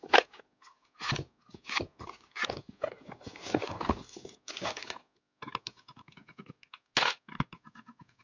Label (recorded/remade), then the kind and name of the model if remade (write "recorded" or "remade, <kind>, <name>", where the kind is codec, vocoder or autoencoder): recorded